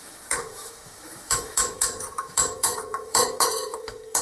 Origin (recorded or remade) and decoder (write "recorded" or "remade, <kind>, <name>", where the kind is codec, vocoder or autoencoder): remade, autoencoder, DAC-VAE